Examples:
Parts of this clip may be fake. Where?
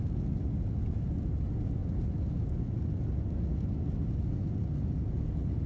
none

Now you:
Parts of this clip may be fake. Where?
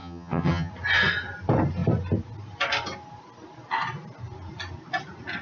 0.0-0.7 (vocoder, HiFi-GAN)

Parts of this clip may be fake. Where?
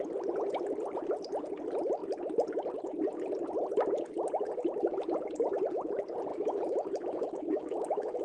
6.3-8.2 (autoencoder, DAC-VAE)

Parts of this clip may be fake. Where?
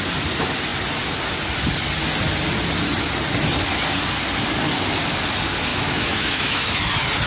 5.7-6.8 (autoencoder, DAC-VAE)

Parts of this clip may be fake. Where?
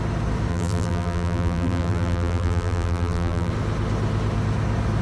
0.5-3.5 (vocoder, BigVGAN v2)